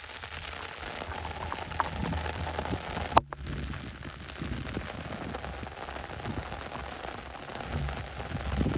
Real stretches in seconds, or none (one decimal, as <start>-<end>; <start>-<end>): 0.0-8.8

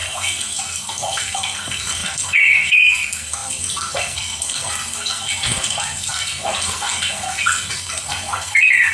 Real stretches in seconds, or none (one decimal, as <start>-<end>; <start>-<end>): none

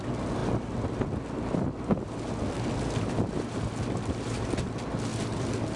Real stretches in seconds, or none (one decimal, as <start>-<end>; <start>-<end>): 0.4-3.9

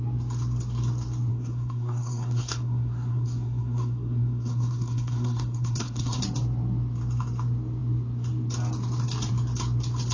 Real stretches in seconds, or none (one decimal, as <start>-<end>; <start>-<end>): 0.0-1.3; 6.2-10.1

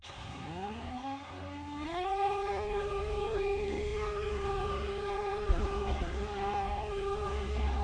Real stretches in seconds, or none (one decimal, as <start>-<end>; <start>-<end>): none

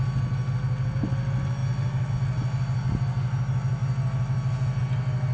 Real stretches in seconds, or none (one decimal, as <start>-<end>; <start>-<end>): 0.0-5.3

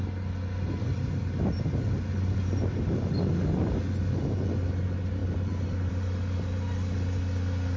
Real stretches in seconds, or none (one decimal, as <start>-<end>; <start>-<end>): 0.0-7.8